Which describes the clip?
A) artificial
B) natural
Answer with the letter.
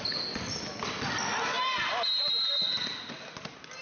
B